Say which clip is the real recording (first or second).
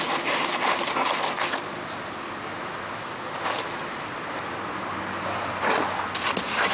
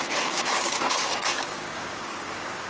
first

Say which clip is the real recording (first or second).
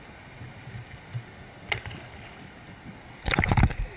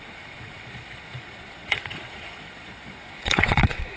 first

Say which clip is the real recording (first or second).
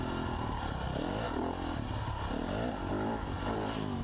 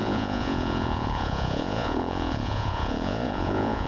first